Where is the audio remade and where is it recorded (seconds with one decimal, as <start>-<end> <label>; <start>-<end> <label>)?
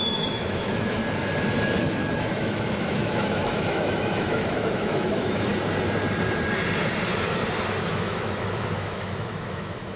0.0-1.0 remade; 1.0-1.8 recorded; 1.8-5.5 remade; 5.5-7.9 recorded; 7.9-10.0 remade